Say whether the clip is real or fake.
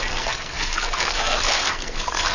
fake